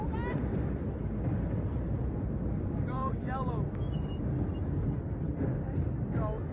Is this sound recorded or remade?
recorded